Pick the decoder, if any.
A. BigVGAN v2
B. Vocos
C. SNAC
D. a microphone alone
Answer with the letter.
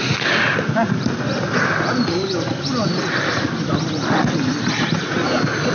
D